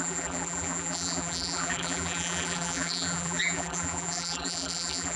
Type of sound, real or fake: fake